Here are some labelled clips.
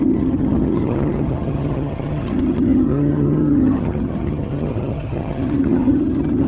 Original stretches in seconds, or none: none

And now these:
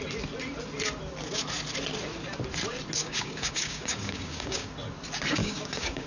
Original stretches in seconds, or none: 0.0-3.0; 4.7-5.4

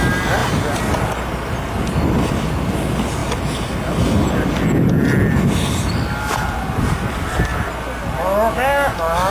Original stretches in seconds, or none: 0.0-9.3

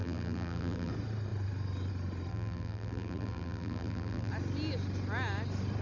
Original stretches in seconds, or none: 0.9-2.3; 4.3-5.8